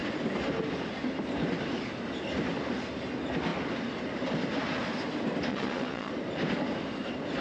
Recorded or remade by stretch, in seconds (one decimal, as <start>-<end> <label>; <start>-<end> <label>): 0.0-5.5 recorded; 5.5-6.1 remade; 6.1-7.4 recorded

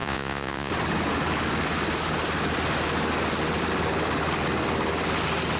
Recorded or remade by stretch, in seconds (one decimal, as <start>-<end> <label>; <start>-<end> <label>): 0.0-0.7 remade; 0.7-5.6 recorded

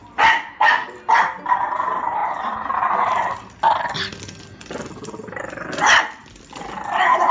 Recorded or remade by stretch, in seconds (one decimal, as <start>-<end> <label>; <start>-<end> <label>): 0.0-7.3 recorded